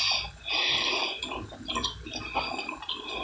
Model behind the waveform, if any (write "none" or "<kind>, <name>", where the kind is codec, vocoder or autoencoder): none